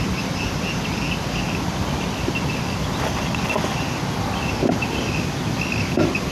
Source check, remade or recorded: recorded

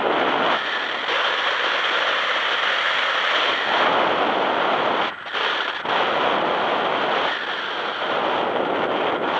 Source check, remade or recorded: recorded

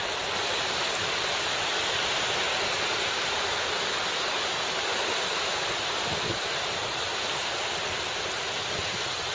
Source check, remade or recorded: recorded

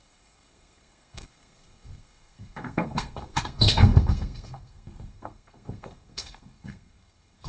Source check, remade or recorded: remade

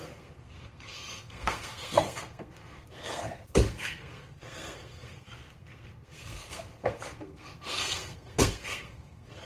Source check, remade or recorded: remade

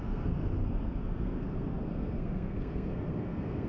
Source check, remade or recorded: remade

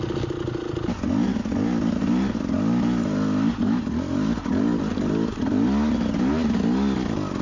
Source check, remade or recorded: recorded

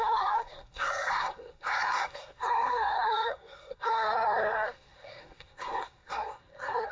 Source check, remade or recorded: remade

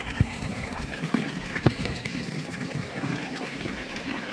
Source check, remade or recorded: remade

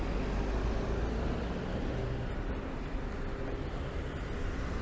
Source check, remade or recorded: recorded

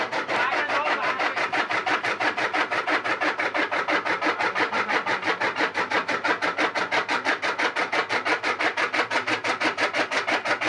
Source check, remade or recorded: recorded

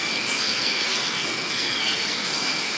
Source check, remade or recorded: remade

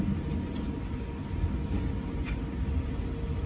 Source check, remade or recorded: recorded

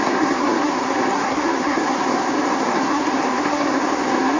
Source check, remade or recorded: remade